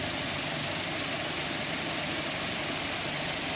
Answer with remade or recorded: recorded